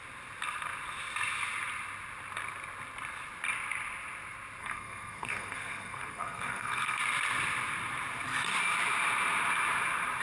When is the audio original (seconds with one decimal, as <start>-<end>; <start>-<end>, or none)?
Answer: 0.0-4.6; 7.0-10.2

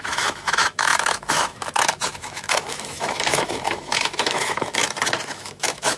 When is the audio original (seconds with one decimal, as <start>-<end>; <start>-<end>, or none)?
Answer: 4.8-5.3

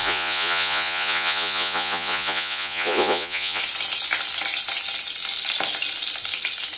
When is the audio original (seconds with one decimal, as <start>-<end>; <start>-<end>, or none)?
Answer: 3.6-6.8

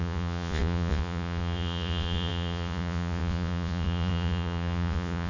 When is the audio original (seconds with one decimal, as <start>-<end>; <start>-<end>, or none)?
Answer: none

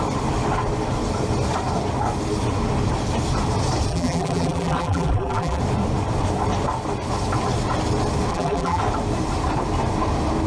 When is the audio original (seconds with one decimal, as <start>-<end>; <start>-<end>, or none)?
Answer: 0.0-3.9; 5.6-8.3; 8.8-10.5

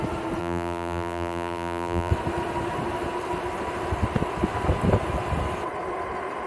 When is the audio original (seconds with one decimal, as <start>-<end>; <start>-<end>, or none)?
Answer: 0.0-0.4; 2.1-6.5